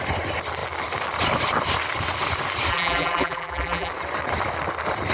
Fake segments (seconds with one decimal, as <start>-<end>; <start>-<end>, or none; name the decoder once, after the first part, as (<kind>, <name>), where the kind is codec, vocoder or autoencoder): 2.7-3.9 (vocoder, BigVGAN v2)